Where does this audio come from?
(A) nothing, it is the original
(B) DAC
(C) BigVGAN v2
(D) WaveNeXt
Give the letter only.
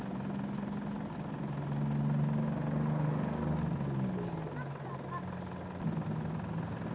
A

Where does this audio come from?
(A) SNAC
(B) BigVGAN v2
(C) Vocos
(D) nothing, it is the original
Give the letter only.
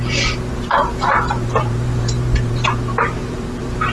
B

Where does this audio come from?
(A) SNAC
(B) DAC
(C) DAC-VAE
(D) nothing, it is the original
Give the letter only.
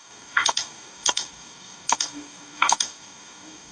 B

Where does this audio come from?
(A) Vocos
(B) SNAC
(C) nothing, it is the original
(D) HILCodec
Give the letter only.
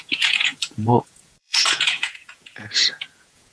A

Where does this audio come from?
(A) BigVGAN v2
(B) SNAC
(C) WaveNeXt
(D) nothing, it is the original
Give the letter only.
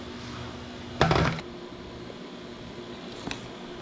D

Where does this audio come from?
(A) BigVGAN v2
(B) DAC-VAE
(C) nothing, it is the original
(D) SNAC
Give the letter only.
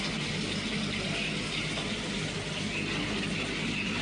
C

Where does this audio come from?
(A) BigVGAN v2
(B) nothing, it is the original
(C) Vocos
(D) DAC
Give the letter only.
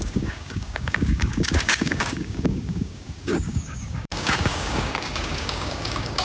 D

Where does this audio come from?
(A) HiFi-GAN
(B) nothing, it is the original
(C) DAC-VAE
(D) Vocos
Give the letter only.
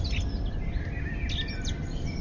B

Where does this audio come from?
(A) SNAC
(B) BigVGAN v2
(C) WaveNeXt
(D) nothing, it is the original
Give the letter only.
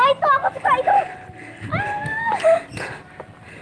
D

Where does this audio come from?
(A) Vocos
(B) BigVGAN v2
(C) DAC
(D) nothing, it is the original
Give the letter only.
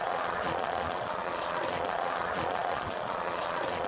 A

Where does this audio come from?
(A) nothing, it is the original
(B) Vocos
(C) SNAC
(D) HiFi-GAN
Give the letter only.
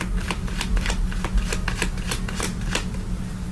A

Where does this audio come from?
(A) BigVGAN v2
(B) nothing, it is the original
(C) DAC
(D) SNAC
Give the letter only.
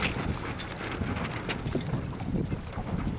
B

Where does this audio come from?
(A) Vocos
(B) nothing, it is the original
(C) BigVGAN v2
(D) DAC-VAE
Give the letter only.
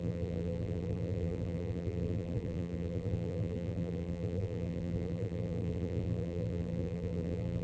C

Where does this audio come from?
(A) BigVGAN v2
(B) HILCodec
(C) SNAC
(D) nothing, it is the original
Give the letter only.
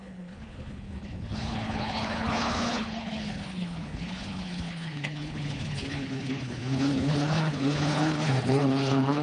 B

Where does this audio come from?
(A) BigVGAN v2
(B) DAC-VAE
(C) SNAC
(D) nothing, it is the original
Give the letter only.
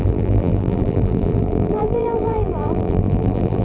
A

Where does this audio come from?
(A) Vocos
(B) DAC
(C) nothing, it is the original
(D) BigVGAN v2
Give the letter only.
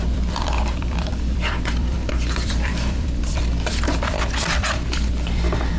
D